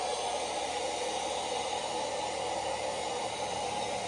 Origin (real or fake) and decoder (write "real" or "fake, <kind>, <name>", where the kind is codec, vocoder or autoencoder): real